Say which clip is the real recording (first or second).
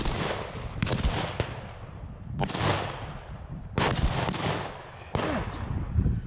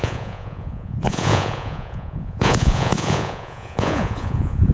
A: first